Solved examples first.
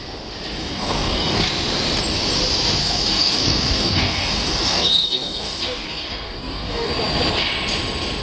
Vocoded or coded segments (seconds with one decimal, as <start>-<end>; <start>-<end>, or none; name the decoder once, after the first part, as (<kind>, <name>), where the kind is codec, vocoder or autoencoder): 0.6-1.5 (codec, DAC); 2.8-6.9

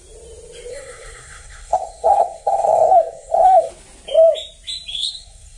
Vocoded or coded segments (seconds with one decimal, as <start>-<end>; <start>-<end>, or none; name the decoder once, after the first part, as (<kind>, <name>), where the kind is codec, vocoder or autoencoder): 0.7-3.7 (codec, SNAC); 4.9-5.6

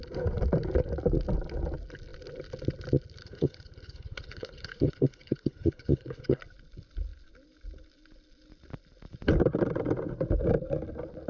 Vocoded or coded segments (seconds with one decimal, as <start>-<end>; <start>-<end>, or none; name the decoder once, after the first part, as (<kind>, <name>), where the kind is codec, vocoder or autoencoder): 3.2-6.4 (codec, HILCodec)